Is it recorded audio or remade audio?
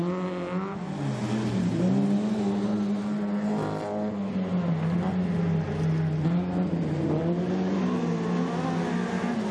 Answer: recorded